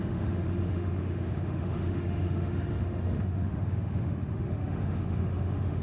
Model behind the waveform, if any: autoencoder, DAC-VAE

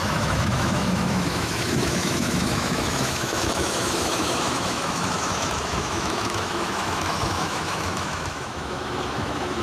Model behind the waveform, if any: autoencoder, DAC-VAE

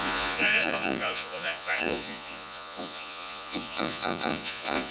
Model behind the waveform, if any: vocoder, Vocos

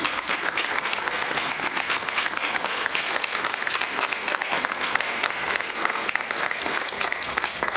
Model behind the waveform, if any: codec, SNAC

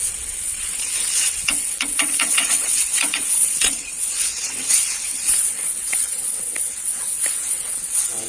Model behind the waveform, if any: vocoder, WaveNeXt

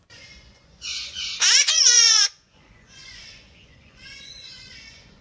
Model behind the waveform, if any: vocoder, Vocos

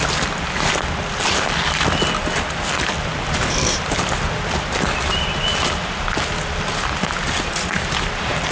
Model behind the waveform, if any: none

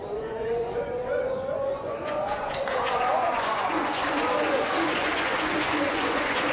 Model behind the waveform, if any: vocoder, Vocos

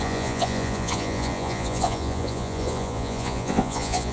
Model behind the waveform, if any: vocoder, Vocos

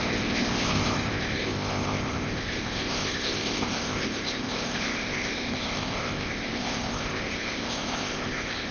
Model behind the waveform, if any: codec, ZipCodec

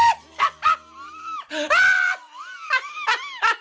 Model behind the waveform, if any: none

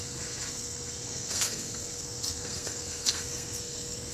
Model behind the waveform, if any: codec, SNAC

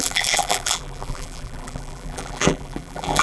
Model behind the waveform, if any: vocoder, BigVGAN v2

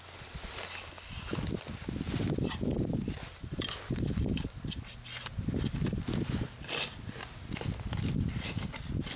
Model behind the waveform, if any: none